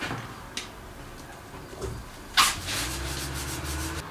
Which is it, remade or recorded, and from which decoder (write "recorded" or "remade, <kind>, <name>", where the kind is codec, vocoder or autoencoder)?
recorded